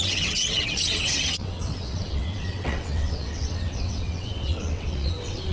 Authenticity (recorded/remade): remade